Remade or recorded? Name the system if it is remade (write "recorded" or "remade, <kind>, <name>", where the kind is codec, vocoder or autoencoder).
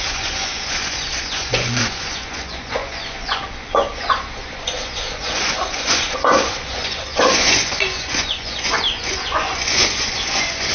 remade, vocoder, Vocos